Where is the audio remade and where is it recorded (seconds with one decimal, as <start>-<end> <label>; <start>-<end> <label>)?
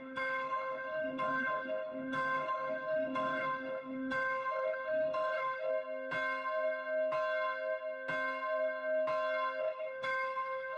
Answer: 0.0-5.7 remade; 5.7-9.6 recorded; 9.6-10.8 remade